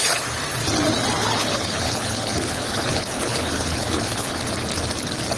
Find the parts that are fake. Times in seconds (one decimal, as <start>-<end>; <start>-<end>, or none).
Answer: 1.2-4.4

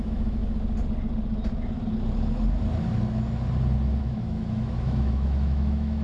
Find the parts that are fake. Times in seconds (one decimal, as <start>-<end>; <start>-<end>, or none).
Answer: 0.0-0.4; 4.0-6.0

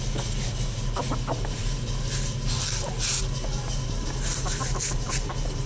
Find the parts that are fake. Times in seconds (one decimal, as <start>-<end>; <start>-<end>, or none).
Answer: none

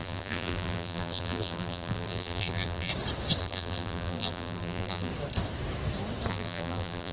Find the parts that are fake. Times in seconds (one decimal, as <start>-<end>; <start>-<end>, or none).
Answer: 0.0-2.9; 3.4-5.1; 6.3-7.1

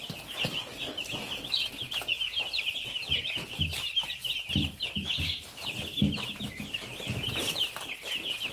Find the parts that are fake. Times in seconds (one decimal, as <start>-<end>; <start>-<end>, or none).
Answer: 3.4-6.4